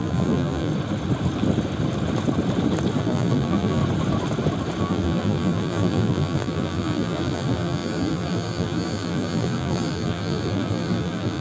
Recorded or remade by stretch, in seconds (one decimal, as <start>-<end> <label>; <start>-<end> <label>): 0.0-0.7 remade; 0.7-3.0 recorded; 3.0-3.8 remade; 3.8-4.8 recorded; 4.8-11.4 remade